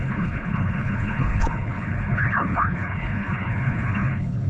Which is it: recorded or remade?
remade